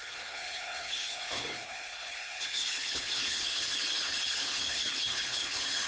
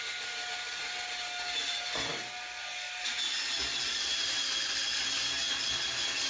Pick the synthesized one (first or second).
first